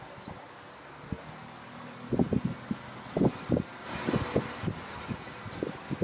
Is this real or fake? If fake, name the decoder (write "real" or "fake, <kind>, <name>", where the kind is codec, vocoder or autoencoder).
real